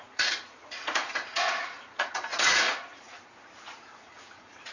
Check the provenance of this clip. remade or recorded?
remade